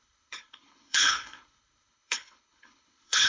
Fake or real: fake